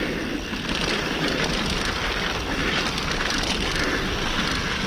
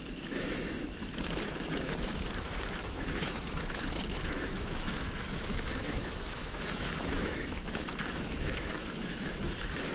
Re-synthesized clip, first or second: second